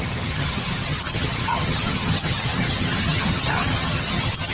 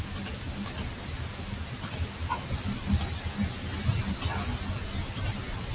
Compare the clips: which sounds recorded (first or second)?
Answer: second